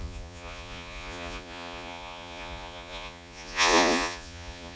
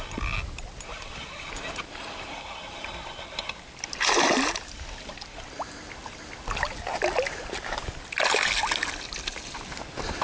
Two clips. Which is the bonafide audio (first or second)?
second